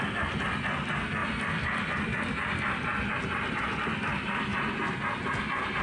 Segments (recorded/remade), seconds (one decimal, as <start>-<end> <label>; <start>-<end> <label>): 0.0-5.8 recorded